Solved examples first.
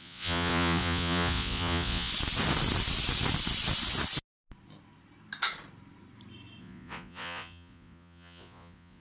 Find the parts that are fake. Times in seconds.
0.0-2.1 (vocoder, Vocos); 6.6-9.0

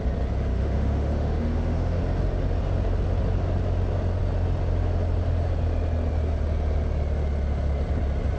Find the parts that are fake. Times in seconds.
0.5-2.0 (autoencoder, DAC-VAE)

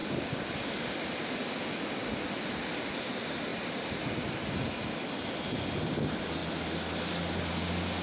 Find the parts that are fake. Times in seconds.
none

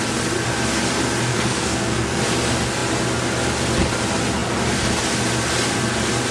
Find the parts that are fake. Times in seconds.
1.3-2.2 (codec, SNAC)

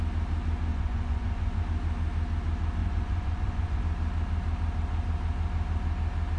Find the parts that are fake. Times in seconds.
0.7-1.6 (vocoder, Vocos); 2.8-3.8